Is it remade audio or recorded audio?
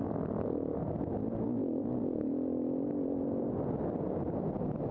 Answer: recorded